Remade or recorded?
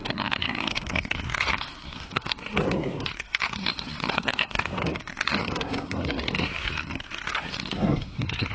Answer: remade